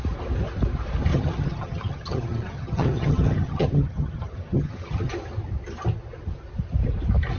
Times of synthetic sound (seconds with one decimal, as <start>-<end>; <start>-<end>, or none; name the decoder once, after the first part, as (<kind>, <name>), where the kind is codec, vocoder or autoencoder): 1.1-5.1 (vocoder, HiFi-GAN)